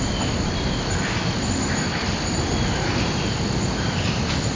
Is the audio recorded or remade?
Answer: recorded